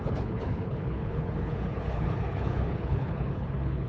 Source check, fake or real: fake